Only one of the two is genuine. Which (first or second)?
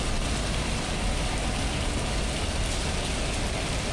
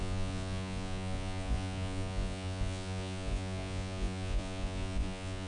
first